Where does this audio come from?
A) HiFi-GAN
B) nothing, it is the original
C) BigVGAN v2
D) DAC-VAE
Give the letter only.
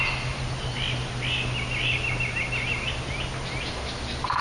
B